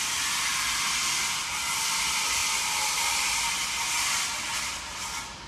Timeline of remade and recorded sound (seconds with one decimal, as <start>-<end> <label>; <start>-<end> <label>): 0.0-5.5 recorded